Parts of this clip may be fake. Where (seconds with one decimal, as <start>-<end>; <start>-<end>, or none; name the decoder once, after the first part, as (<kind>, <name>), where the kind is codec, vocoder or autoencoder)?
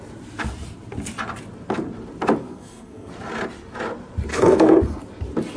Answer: 2.4-3.1 (codec, SNAC); 4.3-4.8